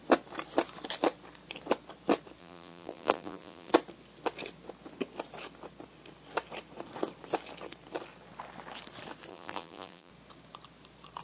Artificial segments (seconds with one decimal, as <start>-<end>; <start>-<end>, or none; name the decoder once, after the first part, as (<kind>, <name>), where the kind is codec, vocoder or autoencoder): 2.4-3.7 (vocoder, BigVGAN v2); 9.3-10.1